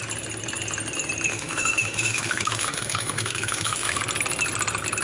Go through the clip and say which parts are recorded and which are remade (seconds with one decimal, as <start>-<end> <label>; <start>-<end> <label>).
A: 0.0-1.3 recorded; 1.3-4.0 remade; 4.0-5.0 recorded